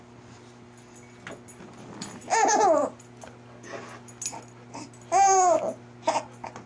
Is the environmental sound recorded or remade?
recorded